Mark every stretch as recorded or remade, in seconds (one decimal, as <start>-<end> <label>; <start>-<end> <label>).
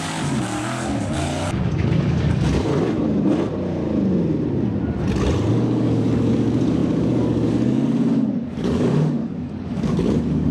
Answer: 0.0-2.7 remade; 2.7-5.5 recorded; 5.5-10.5 remade